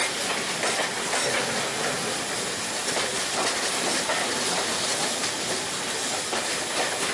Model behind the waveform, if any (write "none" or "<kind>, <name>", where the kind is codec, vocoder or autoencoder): none